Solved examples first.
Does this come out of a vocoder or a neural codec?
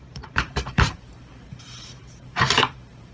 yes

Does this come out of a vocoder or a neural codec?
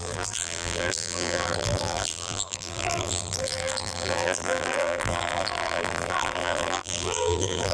yes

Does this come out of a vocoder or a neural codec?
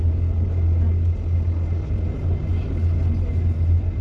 no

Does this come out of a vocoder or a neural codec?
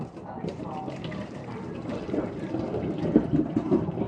yes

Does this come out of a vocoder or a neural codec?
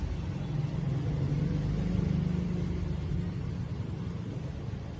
no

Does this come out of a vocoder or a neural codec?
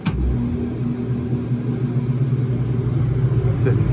no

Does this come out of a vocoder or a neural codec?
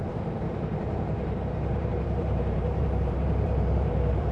yes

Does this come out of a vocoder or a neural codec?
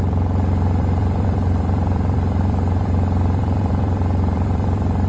yes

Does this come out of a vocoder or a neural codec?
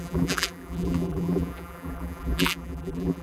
yes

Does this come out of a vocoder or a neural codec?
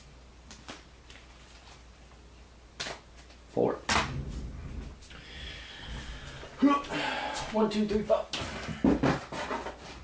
no